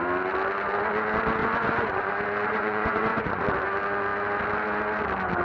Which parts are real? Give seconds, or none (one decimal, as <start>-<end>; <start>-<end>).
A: 0.0-1.4; 2.1-2.5; 3.4-5.4